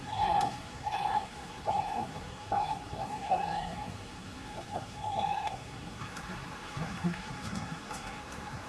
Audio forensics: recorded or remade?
remade